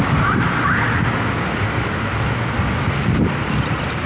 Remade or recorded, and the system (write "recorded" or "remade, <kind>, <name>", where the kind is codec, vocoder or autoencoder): recorded